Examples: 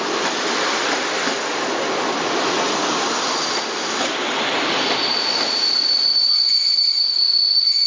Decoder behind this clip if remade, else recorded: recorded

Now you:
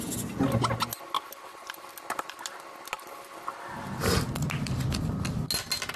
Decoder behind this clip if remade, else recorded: recorded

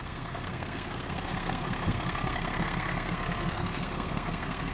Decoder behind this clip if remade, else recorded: remade, codec, SNAC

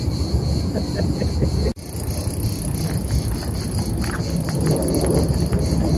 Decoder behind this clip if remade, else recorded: recorded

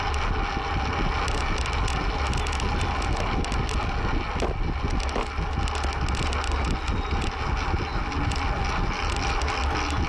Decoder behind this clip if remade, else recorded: recorded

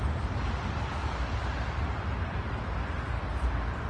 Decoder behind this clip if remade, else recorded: recorded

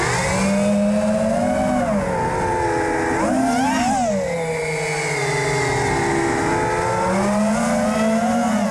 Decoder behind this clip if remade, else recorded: recorded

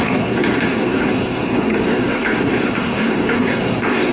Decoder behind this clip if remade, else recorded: remade, codec, SNAC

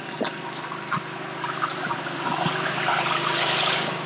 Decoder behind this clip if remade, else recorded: recorded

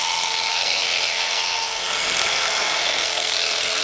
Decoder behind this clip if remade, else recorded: remade, codec, SNAC